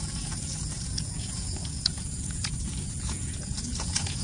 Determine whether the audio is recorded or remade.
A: remade